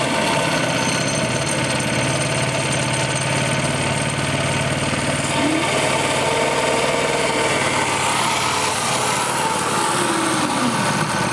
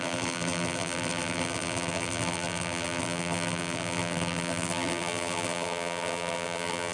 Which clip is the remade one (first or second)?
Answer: second